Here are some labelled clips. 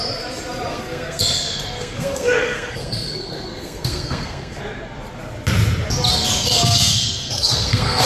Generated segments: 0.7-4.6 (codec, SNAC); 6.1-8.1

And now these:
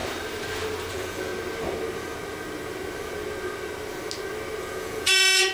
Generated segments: 0.9-1.3 (vocoder, Vocos); 4.6-5.5

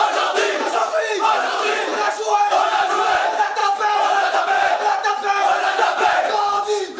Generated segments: 0.0-7.0 (vocoder, BigVGAN v2)

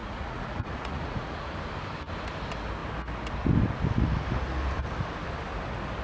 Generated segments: 0.0-1.5 (vocoder, Vocos)

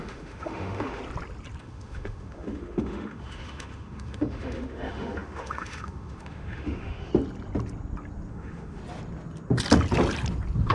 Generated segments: 0.0-1.0 (autoencoder, DAC-VAE); 1.6-7.1; 8.3-8.8

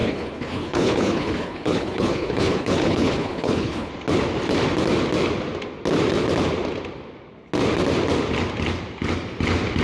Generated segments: 0.0-3.9 (codec, HILCodec)

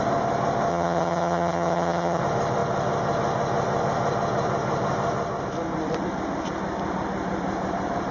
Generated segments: 0.7-2.2 (vocoder, HiFi-GAN)

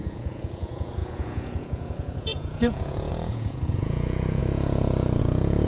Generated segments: 0.0-5.7 (vocoder, Vocos)